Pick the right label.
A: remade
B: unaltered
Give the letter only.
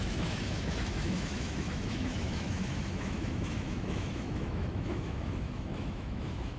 A